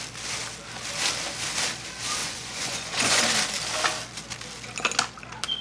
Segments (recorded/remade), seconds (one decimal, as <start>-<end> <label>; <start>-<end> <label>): 0.0-2.2 recorded; 2.2-3.2 remade; 3.2-5.6 recorded